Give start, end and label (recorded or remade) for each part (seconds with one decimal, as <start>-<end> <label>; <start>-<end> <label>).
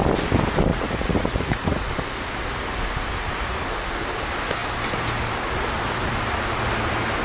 0.0-0.7 recorded; 0.7-1.9 remade; 1.9-7.2 recorded